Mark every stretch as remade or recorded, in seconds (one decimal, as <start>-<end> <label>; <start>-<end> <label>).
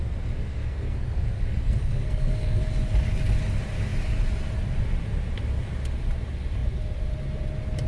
0.0-2.7 remade; 2.7-7.9 recorded